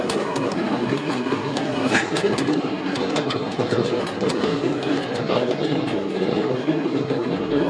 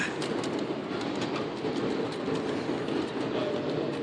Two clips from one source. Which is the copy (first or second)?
first